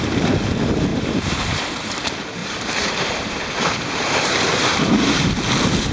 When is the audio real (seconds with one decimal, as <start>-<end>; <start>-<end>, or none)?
0.0-0.9; 1.9-2.4; 4.3-5.9